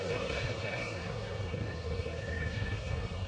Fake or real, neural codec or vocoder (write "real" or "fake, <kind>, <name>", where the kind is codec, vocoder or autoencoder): fake, codec, SNAC